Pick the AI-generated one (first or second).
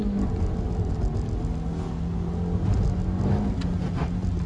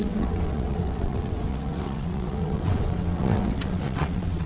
second